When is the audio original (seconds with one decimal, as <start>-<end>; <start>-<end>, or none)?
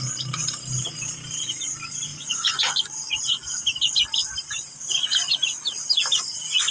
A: 0.0-2.1; 3.1-6.7